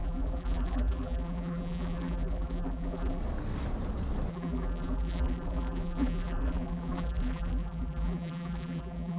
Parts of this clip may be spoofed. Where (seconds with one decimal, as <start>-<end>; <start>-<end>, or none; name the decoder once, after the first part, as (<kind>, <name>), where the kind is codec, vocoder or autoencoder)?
0.0-3.2 (vocoder, BigVGAN v2); 4.3-9.2